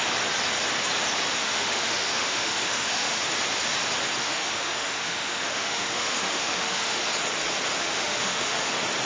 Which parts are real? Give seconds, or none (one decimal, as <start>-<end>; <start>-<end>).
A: 0.0-1.4; 3.2-4.2; 7.0-7.8; 8.7-9.1